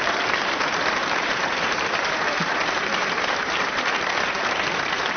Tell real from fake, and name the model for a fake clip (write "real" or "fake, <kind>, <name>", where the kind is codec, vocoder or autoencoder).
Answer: fake, vocoder, BigVGAN v2